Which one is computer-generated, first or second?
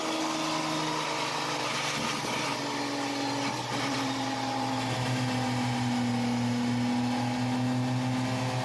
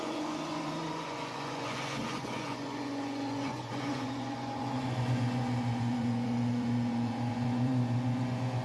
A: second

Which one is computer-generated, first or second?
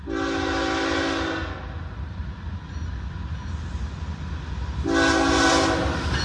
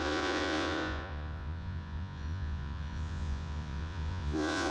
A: second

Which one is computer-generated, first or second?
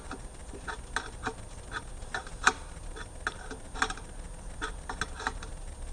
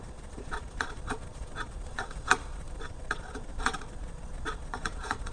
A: second